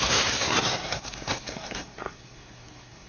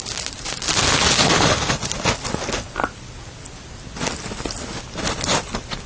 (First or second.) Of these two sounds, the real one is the second